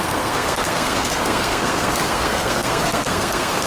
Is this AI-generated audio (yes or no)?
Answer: yes